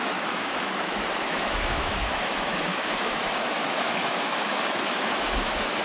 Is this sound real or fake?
fake